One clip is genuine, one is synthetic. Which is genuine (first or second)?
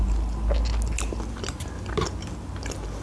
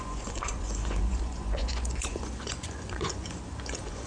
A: first